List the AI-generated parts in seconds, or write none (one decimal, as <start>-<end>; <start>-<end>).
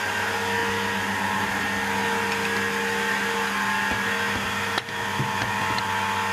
none